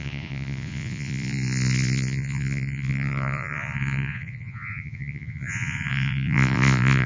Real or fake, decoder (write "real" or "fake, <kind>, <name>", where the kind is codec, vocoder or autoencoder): fake, vocoder, Vocos